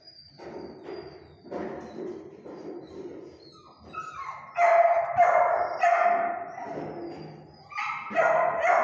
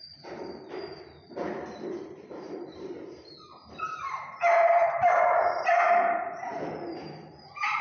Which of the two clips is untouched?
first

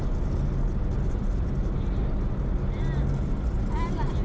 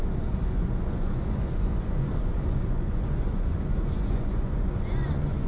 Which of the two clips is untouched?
first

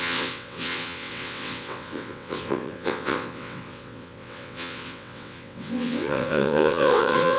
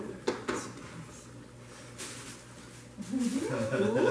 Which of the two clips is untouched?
second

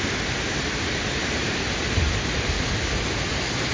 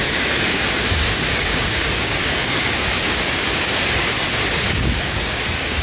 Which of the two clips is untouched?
first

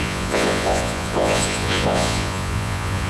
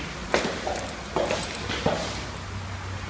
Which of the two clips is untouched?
second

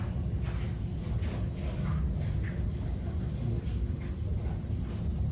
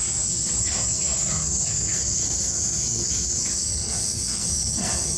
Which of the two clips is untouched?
first